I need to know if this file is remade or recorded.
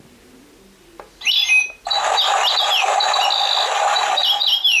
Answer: recorded